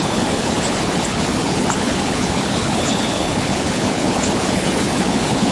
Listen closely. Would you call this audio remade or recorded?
remade